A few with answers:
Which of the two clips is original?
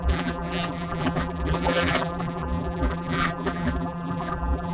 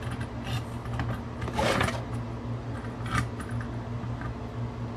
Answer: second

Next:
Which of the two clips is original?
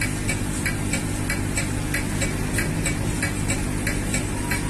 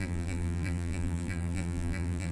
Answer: first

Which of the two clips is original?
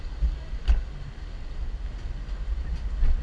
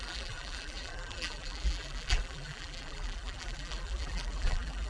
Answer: first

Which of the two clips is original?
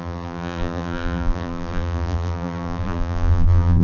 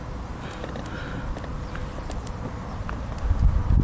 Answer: second